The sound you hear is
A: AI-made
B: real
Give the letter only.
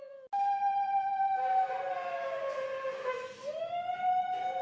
B